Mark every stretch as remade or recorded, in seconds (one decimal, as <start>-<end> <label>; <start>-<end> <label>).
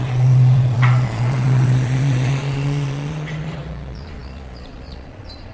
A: 0.0-5.5 remade